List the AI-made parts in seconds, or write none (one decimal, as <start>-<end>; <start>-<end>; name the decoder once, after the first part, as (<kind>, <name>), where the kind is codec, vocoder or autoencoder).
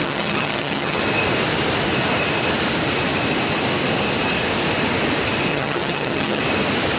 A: 0.0-1.0 (vocoder, HiFi-GAN); 5.5-6.4